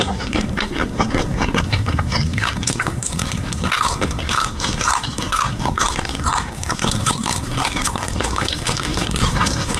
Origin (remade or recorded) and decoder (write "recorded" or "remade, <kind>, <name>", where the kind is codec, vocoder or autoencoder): remade, codec, SNAC